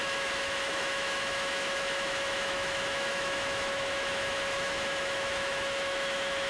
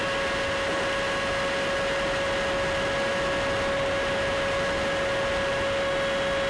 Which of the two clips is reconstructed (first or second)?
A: first